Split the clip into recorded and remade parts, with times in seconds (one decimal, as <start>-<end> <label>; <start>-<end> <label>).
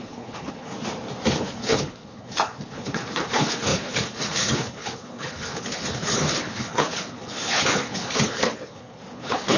0.0-0.7 remade; 0.7-1.4 recorded; 1.4-9.6 remade